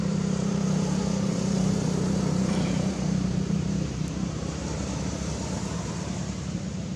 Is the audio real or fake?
fake